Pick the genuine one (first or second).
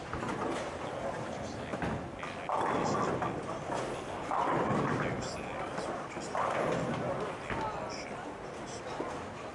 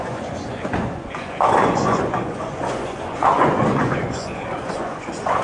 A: first